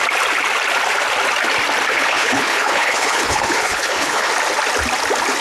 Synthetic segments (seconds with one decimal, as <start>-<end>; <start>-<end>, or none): 1.9-4.3